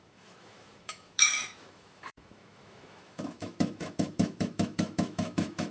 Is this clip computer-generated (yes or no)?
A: yes